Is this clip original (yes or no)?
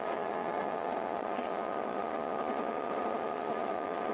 no